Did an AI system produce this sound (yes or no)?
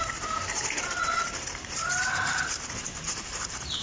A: yes